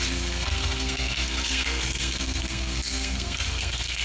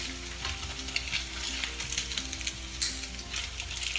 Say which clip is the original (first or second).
second